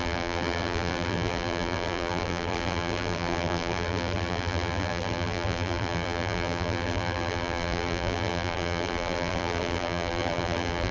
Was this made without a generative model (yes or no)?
no